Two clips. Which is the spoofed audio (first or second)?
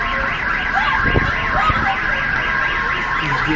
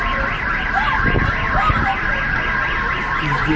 second